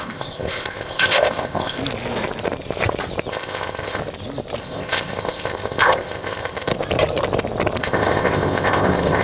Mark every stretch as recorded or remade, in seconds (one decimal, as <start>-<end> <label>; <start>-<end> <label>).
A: 0.0-1.8 remade; 1.8-3.3 recorded; 3.3-4.0 remade; 4.0-4.6 recorded; 4.6-6.7 remade; 6.7-7.8 recorded; 7.8-9.2 remade